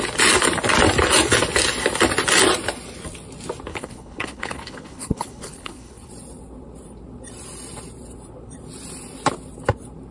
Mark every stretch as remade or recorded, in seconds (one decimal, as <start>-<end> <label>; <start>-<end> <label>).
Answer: 0.0-3.7 recorded; 3.7-6.1 remade; 6.1-10.1 recorded